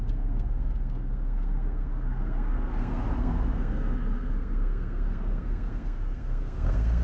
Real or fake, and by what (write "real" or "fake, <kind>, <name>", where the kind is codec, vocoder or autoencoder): fake, codec, SNAC